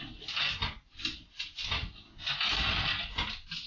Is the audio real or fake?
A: real